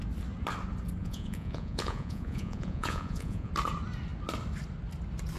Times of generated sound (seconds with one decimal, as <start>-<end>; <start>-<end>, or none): 1.0-3.5